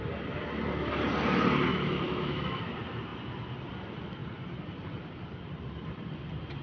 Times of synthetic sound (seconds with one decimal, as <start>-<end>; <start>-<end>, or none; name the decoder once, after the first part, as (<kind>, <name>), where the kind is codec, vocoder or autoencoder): 1.7-2.6 (autoencoder, DAC-VAE)